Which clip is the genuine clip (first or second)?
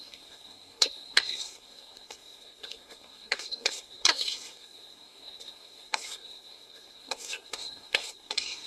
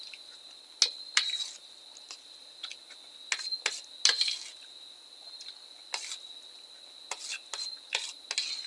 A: second